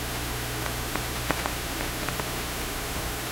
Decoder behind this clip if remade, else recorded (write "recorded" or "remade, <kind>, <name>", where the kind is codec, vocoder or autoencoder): remade, autoencoder, DAC-VAE